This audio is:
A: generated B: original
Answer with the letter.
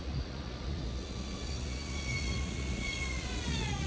A